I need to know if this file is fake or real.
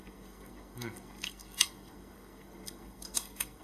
fake